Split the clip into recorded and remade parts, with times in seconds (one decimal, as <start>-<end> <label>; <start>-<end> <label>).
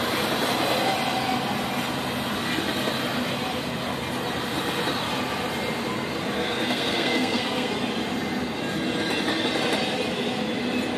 0.0-6.4 recorded; 6.4-7.7 remade; 7.7-11.0 recorded